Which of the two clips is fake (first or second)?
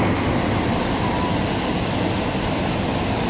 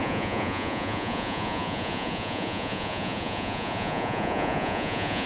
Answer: second